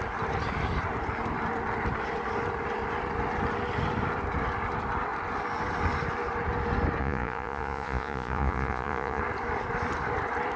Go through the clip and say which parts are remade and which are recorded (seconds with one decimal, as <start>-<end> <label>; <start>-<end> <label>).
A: 0.0-7.0 recorded; 7.0-9.2 remade; 9.2-10.6 recorded